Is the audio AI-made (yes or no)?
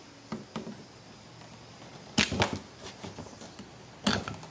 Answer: no